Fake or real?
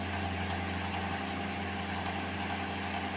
real